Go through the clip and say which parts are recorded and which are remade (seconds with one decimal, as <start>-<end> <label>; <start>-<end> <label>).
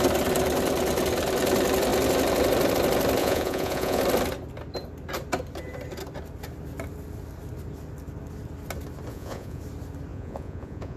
0.0-3.2 recorded; 3.2-4.0 remade; 4.0-9.1 recorded; 9.1-9.6 remade; 9.6-10.1 recorded; 10.1-11.0 remade